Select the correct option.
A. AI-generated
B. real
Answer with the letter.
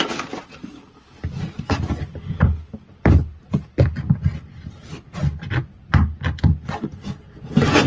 B